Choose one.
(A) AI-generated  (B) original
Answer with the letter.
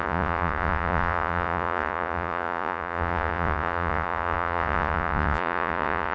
A